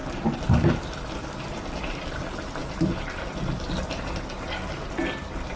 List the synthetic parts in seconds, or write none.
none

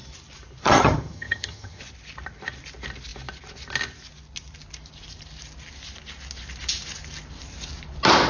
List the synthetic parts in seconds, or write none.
0.6-1.8 (vocoder, HiFi-GAN)

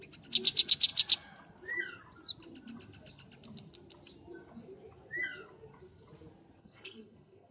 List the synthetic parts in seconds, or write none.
6.6-7.5 (codec, SNAC)

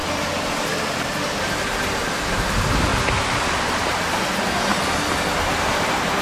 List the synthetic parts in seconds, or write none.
2.0-2.9 (vocoder, BigVGAN v2); 4.1-4.7; 5.8-6.2

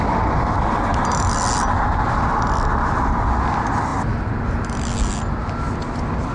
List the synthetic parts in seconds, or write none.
none